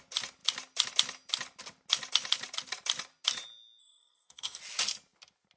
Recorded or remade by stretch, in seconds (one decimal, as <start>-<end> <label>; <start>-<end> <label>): 0.0-3.8 recorded; 3.8-4.6 remade; 4.6-5.6 recorded